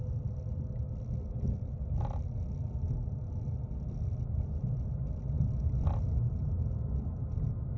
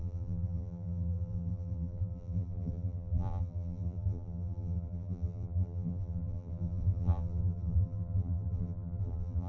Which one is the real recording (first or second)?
first